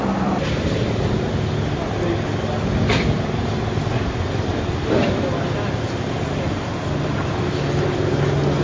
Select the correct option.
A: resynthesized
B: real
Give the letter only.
B